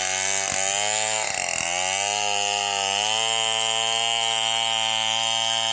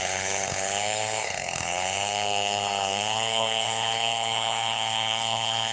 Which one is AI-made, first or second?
second